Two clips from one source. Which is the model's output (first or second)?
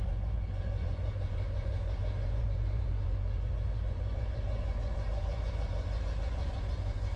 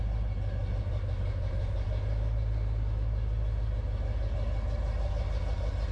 first